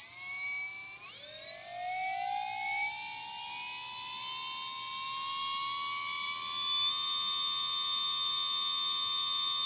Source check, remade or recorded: recorded